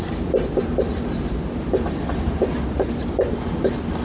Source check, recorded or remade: recorded